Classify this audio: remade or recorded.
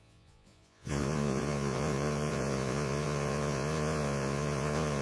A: remade